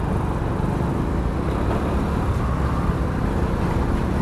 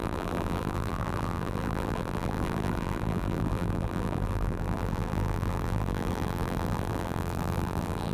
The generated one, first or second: second